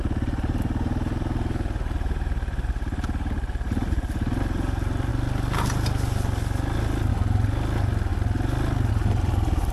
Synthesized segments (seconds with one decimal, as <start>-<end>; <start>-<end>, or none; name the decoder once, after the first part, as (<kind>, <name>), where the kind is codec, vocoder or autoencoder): 0.0-5.1 (vocoder, BigVGAN v2); 7.1-8.1; 8.9-9.7